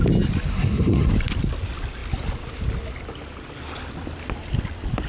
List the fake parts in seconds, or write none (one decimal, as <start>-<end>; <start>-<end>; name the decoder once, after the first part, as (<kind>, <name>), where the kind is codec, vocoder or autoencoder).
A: 0.5-1.1 (codec, SNAC)